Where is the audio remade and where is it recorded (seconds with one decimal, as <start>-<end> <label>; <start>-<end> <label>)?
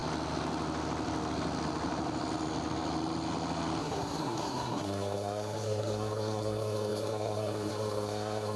0.0-3.8 recorded; 3.8-8.6 remade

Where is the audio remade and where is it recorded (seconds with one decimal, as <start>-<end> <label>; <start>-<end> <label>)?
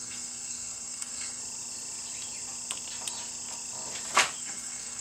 0.0-1.4 remade; 1.4-4.4 recorded; 4.4-5.0 remade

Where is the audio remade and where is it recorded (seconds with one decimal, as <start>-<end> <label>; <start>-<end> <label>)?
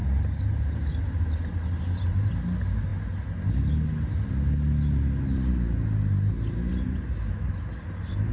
0.0-8.3 recorded